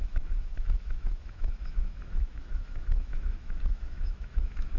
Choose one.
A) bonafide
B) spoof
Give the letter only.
B